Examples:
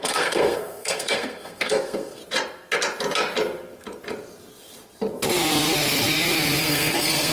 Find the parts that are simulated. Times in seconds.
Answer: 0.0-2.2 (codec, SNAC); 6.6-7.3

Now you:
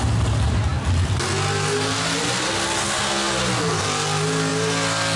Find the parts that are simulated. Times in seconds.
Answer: none

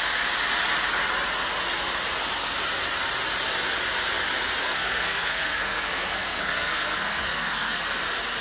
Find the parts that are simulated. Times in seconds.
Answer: 4.6-8.0 (codec, SNAC)

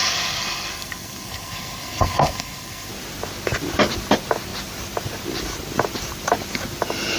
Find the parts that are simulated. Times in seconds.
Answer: 0.0-2.9 (codec, SNAC)